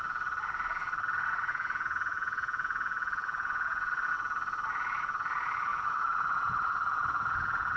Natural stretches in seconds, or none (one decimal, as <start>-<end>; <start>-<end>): 0.0-1.5; 3.9-5.7